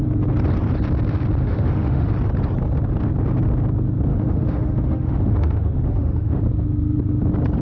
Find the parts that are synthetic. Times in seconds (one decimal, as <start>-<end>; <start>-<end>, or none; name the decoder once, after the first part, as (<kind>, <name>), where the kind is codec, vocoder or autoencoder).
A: 1.4-2.1 (autoencoder, DAC-VAE); 4.1-6.4